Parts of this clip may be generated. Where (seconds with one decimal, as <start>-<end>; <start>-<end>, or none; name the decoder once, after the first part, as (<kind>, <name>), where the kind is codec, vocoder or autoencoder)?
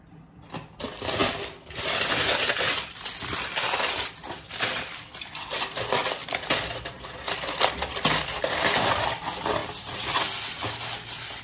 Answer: none